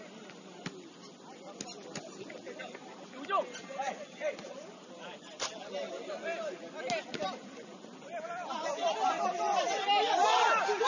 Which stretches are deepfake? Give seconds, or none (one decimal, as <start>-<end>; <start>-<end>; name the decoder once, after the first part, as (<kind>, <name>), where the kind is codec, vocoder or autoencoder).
3.8-5.5 (vocoder, BigVGAN v2)